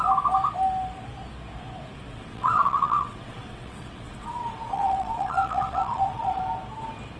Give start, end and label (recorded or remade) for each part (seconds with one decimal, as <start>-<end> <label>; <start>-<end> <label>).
0.0-2.1 recorded; 2.1-6.4 remade; 6.4-7.2 recorded

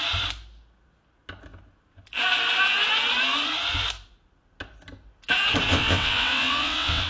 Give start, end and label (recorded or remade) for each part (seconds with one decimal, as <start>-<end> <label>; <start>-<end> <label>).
0.0-5.7 recorded; 5.7-7.1 remade

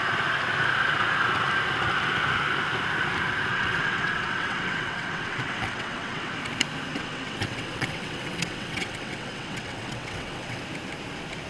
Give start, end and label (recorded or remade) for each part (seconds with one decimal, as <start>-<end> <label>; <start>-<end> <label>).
0.0-3.5 recorded; 3.5-6.4 remade; 6.4-6.9 recorded; 6.9-10.6 remade; 10.6-11.5 recorded

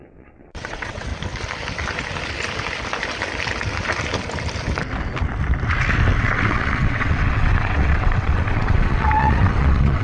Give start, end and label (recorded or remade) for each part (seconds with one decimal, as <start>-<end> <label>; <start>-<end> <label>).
0.0-1.1 remade; 1.1-6.2 recorded; 6.2-10.0 remade

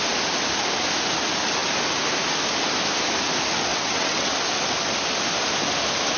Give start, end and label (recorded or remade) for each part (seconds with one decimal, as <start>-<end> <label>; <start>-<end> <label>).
0.0-3.7 recorded; 3.7-4.3 remade; 4.3-6.2 recorded